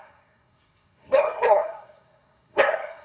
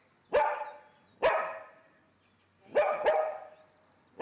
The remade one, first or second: first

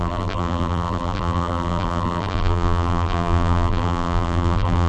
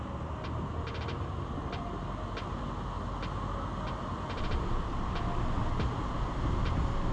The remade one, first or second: first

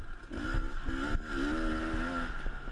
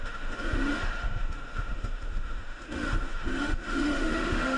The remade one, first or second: second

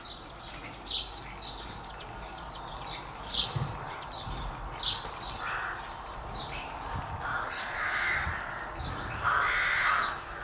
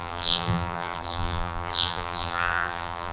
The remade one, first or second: second